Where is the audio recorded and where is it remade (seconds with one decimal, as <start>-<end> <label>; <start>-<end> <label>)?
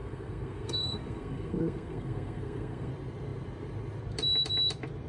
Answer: 0.0-2.9 remade; 2.9-5.1 recorded